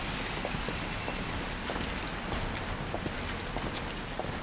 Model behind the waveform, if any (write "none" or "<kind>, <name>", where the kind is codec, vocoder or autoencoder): none